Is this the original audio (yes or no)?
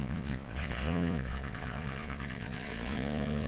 no